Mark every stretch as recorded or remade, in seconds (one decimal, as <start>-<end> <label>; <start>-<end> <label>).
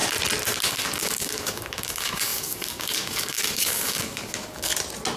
0.0-0.6 recorded; 0.6-4.7 remade; 4.7-5.2 recorded